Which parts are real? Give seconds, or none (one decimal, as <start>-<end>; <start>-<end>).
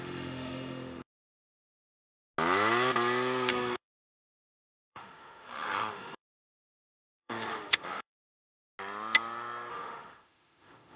1.1-3.5; 8.6-9.7